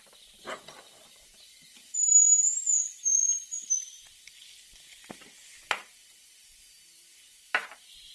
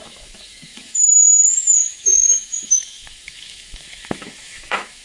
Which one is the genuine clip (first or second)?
first